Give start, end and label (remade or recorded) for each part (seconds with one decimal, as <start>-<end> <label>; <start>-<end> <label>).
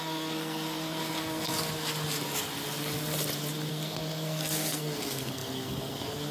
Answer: 0.0-1.5 remade; 1.5-3.7 recorded; 3.7-6.3 remade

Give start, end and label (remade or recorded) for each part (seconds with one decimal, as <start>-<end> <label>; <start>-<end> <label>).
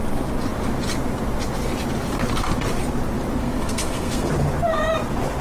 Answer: 0.0-3.4 recorded; 3.4-4.3 remade; 4.3-5.4 recorded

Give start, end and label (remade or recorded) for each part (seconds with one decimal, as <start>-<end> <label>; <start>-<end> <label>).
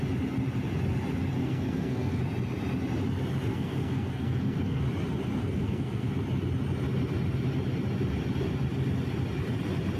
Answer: 0.0-1.4 recorded; 1.4-2.2 remade; 2.2-3.5 recorded; 3.5-4.8 remade; 4.8-5.4 recorded; 5.4-6.1 remade; 6.1-10.0 recorded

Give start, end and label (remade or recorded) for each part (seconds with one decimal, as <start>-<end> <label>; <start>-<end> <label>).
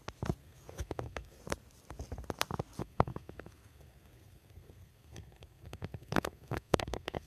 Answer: 0.0-0.4 recorded; 0.4-1.4 remade; 1.4-2.8 recorded; 2.8-7.3 remade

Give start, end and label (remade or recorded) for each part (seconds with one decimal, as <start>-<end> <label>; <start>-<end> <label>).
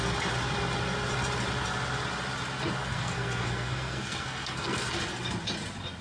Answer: 0.0-2.8 recorded; 2.8-5.0 remade; 5.0-6.0 recorded